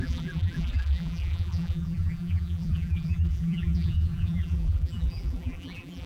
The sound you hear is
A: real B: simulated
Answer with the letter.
B